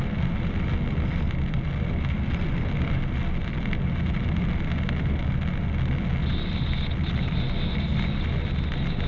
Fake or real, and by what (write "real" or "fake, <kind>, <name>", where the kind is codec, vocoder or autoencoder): real